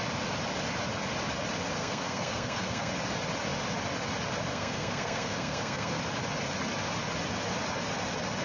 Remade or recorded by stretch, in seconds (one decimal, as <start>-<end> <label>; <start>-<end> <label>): 0.0-1.8 recorded; 1.8-2.9 remade; 2.9-4.5 recorded; 4.5-6.0 remade; 6.0-8.4 recorded